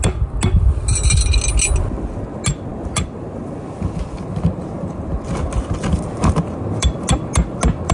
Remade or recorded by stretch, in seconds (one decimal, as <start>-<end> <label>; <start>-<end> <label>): 0.0-7.9 recorded